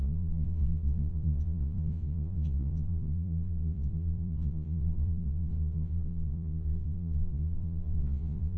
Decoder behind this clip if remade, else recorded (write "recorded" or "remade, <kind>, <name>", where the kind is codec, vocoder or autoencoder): remade, vocoder, Vocos